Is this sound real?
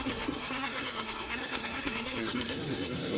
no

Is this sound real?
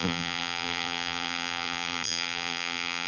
no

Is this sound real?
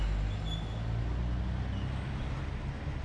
yes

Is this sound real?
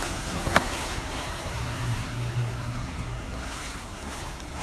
no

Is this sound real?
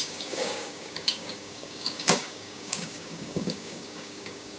no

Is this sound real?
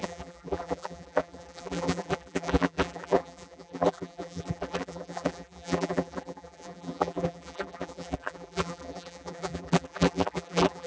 no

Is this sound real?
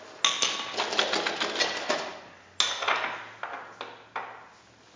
yes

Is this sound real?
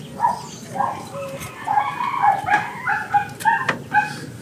yes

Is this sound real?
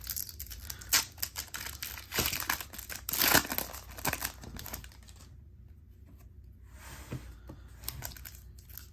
yes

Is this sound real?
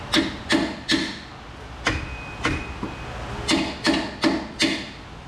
yes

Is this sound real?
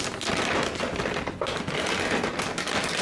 yes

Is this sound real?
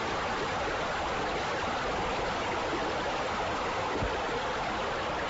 yes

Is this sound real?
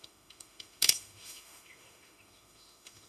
no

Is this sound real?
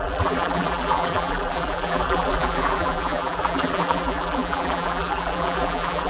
no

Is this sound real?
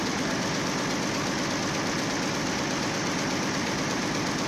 yes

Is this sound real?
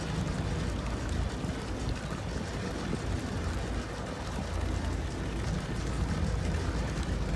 yes